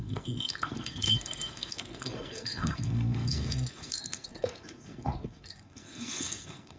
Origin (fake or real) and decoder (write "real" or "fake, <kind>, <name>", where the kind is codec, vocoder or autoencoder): fake, codec, SNAC